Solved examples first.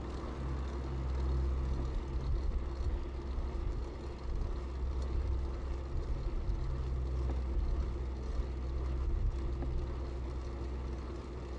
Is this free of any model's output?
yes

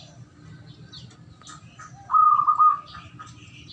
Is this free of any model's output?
yes